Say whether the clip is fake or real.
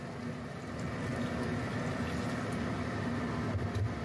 real